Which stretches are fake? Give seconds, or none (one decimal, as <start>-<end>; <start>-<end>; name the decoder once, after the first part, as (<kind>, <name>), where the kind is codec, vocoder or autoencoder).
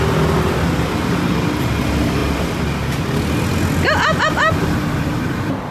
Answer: none